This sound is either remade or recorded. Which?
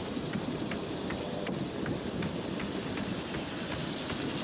remade